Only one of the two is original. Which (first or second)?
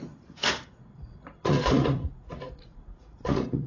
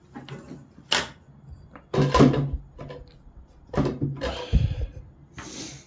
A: second